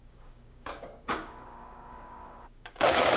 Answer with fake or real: fake